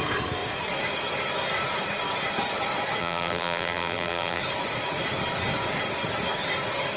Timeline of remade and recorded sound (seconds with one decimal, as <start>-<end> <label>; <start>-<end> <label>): 0.0-3.0 recorded; 3.0-4.4 remade; 4.4-7.0 recorded